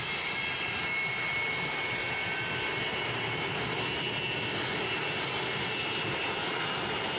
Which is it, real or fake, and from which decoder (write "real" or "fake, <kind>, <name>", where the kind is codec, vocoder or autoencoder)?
real